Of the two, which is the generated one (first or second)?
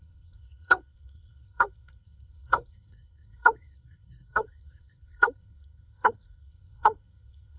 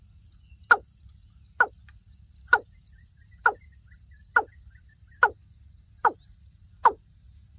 first